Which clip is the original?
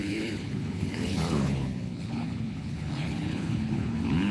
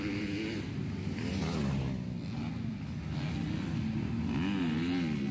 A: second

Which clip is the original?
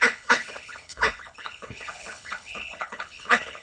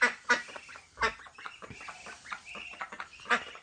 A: second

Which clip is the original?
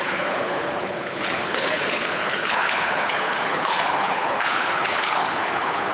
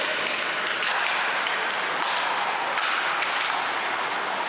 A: second